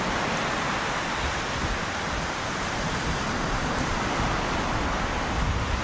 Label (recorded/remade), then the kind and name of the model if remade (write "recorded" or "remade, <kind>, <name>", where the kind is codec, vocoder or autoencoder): recorded